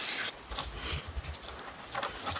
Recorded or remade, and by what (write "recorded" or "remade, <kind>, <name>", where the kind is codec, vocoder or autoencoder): recorded